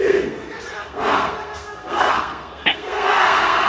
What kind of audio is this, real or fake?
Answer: fake